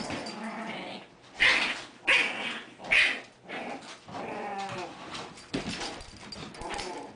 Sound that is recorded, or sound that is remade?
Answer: recorded